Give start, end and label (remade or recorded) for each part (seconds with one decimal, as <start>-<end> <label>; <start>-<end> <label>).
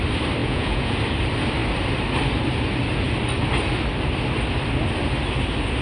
0.0-0.4 recorded; 0.4-1.0 remade; 1.0-5.8 recorded